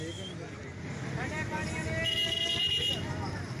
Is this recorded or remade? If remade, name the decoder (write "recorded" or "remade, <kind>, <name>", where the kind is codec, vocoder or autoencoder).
recorded